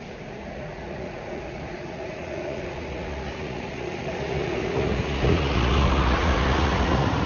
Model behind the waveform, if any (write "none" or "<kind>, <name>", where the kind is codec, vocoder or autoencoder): vocoder, Vocos